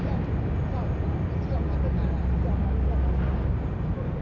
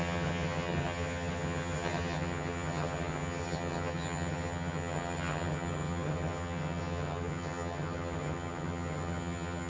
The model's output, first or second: second